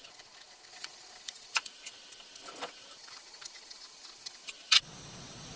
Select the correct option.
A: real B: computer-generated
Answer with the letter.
B